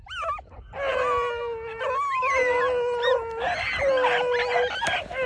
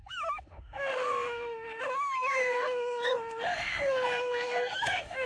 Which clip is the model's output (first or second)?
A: second